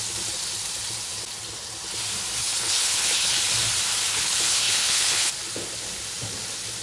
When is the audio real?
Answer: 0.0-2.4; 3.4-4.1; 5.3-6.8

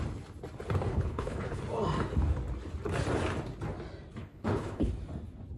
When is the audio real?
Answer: 0.0-0.9; 1.6-4.2; 4.9-5.6

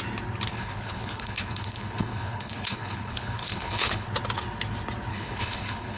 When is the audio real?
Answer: 0.0-0.5; 4.1-5.1

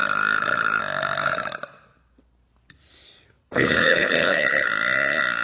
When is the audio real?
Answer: 0.0-3.4; 4.7-5.4

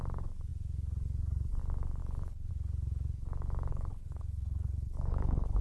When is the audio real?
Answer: 0.0-2.0; 2.5-3.7

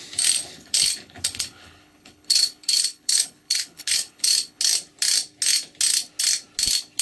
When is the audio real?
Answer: 0.0-0.4; 4.6-7.0

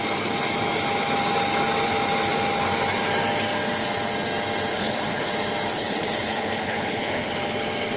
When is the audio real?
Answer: 0.0-4.7; 5.3-5.7; 7.3-8.0

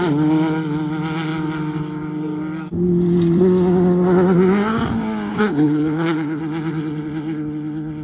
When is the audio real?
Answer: 0.0-5.3; 6.4-8.0